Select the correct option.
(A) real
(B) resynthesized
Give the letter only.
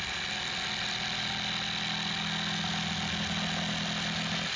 A